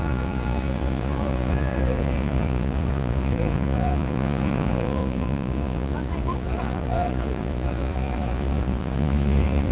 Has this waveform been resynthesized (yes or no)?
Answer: yes